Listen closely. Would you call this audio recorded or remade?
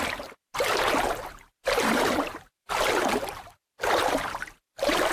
remade